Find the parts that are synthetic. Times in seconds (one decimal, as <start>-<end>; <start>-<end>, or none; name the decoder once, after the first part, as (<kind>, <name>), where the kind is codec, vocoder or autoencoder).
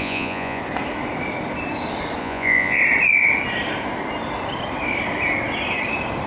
0.0-0.6 (vocoder, Vocos); 2.2-2.8